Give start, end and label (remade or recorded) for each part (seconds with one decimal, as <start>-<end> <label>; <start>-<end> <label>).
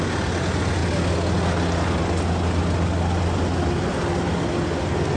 0.0-5.2 recorded